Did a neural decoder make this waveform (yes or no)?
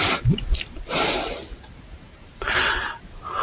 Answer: yes